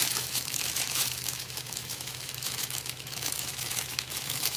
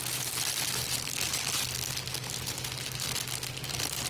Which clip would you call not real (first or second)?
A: first